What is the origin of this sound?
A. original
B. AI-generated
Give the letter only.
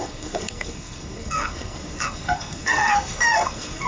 B